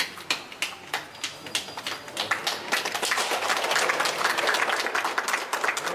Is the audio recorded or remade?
recorded